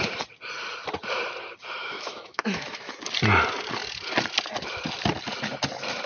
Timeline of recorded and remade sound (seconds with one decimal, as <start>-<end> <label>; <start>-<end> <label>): 0.0-1.8 recorded; 1.8-3.0 remade; 3.0-6.1 recorded